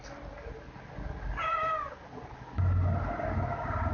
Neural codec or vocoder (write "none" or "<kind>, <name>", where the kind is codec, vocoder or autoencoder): none